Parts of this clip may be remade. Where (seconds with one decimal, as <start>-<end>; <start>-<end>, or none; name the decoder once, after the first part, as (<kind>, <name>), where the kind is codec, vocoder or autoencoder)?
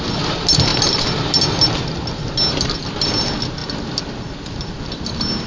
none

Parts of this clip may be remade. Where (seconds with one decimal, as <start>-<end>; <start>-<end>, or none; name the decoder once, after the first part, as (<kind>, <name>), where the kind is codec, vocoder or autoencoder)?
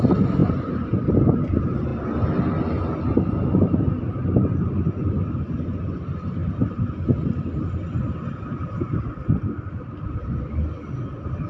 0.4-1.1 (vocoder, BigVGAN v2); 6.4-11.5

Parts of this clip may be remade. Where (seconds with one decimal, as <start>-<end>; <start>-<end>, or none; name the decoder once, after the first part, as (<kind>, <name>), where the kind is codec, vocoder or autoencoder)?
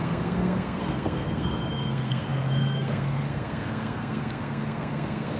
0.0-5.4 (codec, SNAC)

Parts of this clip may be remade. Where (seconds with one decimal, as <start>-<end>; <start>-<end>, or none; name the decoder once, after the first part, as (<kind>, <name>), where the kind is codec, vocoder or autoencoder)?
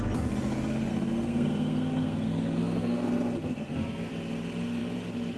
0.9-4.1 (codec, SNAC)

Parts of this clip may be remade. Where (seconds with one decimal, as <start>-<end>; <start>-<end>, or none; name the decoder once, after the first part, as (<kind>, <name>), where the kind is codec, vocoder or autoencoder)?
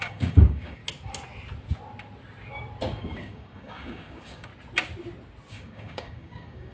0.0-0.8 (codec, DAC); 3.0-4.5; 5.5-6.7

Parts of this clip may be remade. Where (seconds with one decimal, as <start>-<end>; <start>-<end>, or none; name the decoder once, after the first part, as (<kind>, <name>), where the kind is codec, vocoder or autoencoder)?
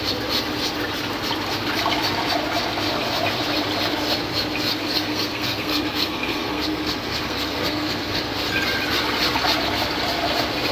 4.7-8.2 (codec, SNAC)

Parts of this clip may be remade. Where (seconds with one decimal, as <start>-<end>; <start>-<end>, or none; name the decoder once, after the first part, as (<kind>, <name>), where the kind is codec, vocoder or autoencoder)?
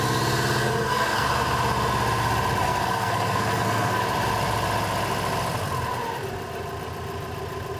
0.6-1.3 (codec, SNAC); 2.6-4.0